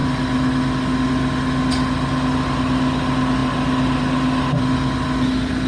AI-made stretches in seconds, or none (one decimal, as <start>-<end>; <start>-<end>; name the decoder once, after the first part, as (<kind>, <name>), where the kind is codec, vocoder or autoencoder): none